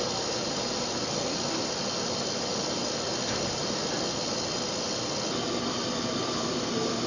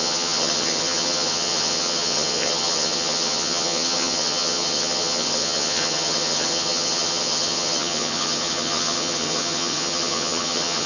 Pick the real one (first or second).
first